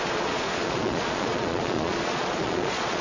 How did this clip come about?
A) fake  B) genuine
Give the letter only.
A